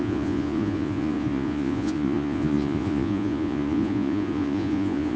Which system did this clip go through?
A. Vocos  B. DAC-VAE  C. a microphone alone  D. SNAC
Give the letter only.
A